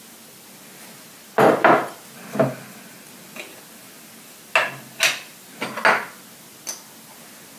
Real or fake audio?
real